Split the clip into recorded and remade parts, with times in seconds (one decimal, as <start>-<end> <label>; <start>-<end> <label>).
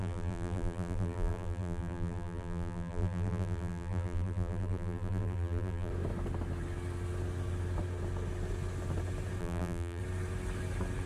0.0-5.9 remade; 5.9-9.4 recorded; 9.4-10.0 remade; 10.0-11.1 recorded